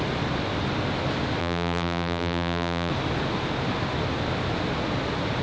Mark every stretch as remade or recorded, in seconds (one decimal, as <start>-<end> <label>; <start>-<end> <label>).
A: 0.0-1.4 recorded; 1.4-2.9 remade; 2.9-5.4 recorded